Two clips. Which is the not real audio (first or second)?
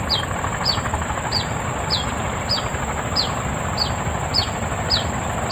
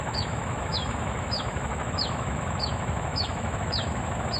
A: second